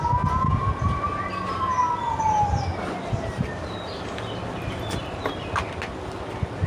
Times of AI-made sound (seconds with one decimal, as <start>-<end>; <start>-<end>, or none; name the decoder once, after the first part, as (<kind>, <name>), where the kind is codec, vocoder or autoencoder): none